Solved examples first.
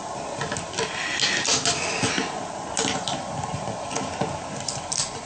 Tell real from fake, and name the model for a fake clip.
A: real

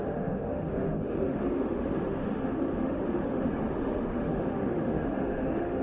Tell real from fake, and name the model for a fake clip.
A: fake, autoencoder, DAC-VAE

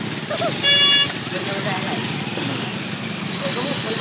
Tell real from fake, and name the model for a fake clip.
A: real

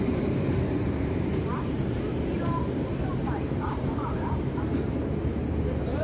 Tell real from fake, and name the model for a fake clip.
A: fake, vocoder, BigVGAN v2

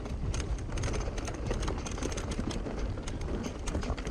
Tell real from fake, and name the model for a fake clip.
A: real